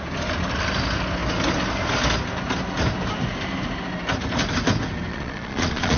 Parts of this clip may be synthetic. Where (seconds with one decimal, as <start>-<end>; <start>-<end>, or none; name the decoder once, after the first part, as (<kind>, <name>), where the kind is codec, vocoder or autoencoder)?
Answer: 5.1-6.0 (vocoder, Vocos)